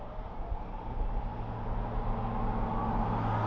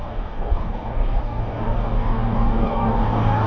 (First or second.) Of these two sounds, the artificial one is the second